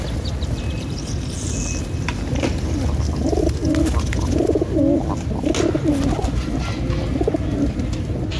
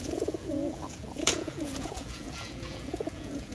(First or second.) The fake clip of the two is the second